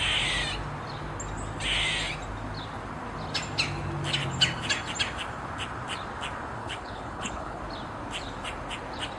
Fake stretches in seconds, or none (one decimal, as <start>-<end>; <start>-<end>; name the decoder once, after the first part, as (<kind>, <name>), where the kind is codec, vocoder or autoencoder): 6.6-7.6 (codec, HILCodec)